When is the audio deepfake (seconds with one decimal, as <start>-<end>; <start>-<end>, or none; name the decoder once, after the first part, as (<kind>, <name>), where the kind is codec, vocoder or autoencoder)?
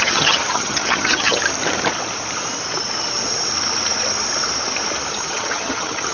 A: 0.0-1.4 (vocoder, HiFi-GAN); 5.1-6.1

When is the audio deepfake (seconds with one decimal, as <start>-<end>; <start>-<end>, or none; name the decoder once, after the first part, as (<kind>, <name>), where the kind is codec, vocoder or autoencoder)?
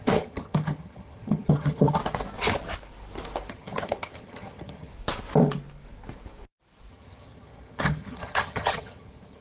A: 0.0-2.0 (vocoder, HiFi-GAN); 3.5-4.9; 6.9-9.4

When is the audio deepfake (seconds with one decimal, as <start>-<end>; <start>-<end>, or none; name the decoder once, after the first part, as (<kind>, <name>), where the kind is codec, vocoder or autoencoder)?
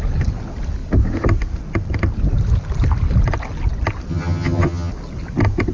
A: 4.1-4.9 (vocoder, HiFi-GAN)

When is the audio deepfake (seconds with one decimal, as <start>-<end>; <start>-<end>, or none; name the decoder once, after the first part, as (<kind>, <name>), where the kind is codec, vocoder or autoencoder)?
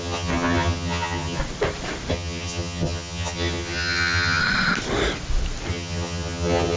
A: 0.0-1.4 (vocoder, HiFi-GAN); 2.1-4.4; 5.7-6.8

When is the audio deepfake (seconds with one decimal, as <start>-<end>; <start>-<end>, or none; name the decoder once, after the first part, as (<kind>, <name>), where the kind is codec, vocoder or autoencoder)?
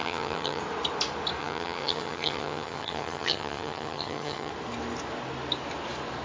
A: 0.0-0.6 (vocoder, HiFi-GAN); 1.4-4.5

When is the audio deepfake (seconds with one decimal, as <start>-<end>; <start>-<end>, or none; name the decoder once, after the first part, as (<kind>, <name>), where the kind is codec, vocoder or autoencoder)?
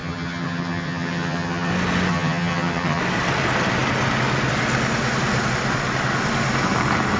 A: 0.0-1.7 (vocoder, HiFi-GAN); 2.1-3.0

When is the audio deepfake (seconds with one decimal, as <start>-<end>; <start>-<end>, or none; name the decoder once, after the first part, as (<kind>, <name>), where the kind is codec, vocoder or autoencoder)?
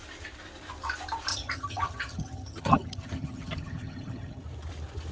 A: 1.3-4.4 (vocoder, HiFi-GAN)